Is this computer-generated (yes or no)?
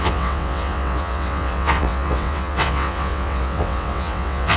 yes